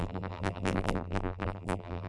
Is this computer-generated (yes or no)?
yes